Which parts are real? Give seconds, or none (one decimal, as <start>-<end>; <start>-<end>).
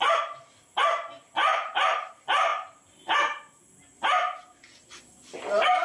0.0-1.5; 2.1-5.8